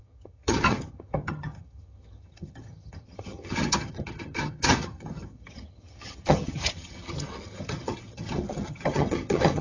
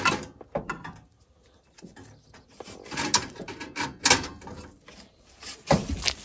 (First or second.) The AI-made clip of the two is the first